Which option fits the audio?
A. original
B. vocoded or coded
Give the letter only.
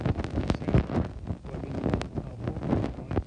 A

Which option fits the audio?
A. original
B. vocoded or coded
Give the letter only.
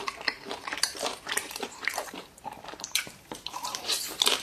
B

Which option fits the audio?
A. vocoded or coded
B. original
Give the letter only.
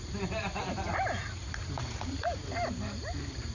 A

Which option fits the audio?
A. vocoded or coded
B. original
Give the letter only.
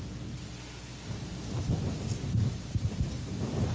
B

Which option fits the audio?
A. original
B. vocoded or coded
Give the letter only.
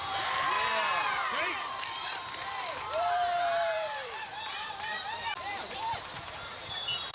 B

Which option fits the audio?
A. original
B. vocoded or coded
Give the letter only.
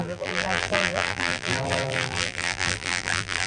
B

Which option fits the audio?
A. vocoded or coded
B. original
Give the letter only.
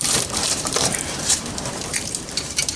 A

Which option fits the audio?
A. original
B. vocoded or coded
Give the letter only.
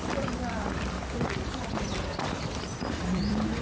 B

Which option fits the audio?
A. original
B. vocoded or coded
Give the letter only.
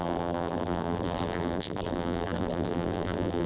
B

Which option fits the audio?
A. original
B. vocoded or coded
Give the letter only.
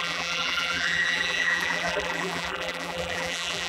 B